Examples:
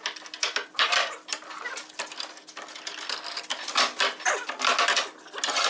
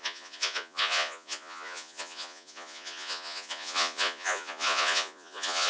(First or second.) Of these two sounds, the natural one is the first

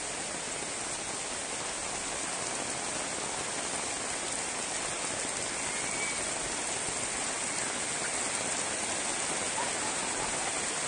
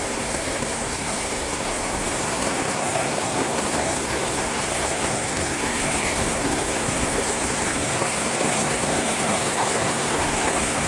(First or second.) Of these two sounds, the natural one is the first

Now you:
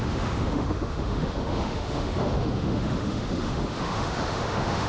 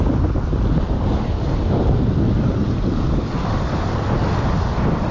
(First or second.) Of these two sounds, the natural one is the second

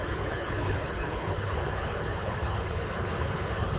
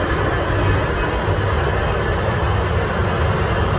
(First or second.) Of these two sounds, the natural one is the second